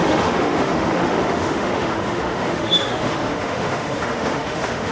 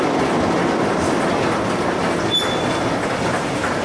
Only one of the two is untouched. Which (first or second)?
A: second